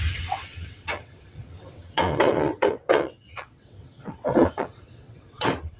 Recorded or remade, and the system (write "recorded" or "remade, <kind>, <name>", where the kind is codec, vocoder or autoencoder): remade, vocoder, WaveNeXt